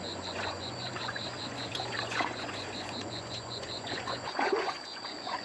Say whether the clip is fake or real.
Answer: fake